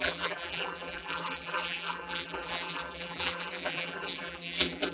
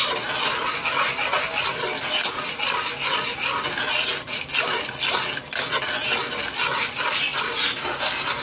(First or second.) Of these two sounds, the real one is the second